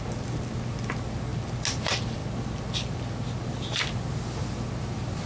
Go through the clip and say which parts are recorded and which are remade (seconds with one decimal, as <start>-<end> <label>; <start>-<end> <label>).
0.0-5.3 recorded

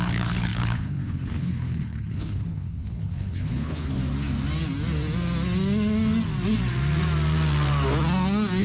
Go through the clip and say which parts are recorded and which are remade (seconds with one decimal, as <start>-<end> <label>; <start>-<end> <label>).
0.0-4.0 remade; 4.0-8.6 recorded

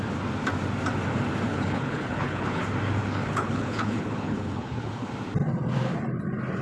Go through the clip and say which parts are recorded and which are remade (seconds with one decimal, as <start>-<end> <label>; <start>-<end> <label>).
0.0-1.5 recorded; 1.5-2.6 remade; 2.6-3.0 recorded; 3.0-5.1 remade; 5.1-6.6 recorded